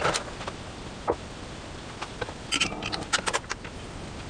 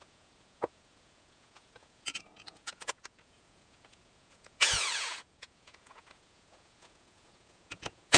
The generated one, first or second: second